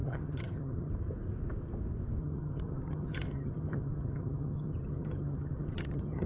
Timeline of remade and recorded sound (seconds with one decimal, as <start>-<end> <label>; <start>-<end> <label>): 0.0-0.9 remade; 0.9-2.2 recorded; 2.2-6.3 remade